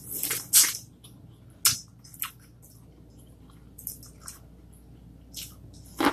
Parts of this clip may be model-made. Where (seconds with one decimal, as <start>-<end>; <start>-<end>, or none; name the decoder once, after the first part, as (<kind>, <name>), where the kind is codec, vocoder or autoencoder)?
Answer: none